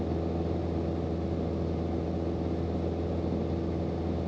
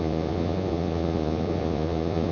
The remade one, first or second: second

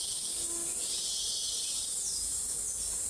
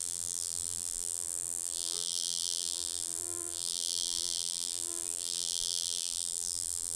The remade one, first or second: second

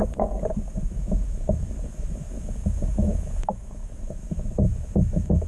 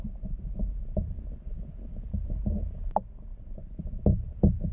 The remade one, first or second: first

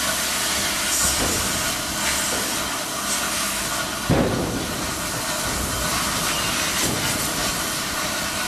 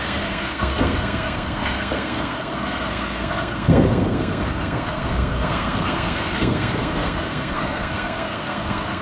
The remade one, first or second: second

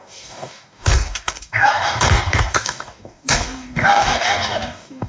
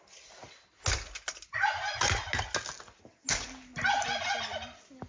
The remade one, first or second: first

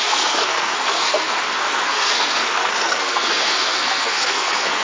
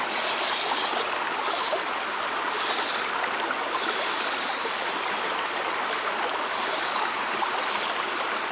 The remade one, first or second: first